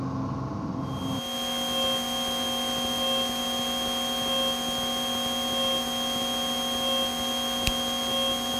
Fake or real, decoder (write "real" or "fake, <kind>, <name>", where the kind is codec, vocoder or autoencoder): real